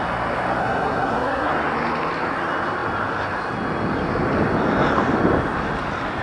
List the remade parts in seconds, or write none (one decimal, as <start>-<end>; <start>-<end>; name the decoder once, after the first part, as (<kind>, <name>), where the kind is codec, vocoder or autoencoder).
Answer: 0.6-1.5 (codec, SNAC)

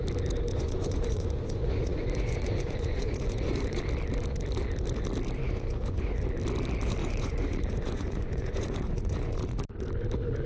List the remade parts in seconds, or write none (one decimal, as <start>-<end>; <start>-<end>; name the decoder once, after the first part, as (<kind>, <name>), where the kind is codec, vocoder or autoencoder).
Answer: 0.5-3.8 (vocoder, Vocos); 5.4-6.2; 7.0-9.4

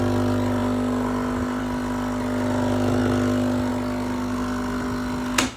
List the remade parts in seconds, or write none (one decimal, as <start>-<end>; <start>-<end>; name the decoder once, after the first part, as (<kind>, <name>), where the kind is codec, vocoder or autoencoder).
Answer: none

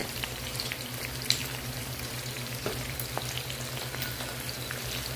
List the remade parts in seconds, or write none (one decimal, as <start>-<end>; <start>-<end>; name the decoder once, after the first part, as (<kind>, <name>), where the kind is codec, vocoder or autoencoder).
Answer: 0.0-3.1 (vocoder, BigVGAN v2)